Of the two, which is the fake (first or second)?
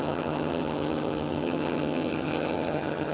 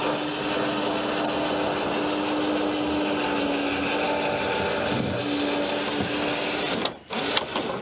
first